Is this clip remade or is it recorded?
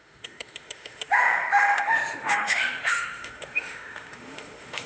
remade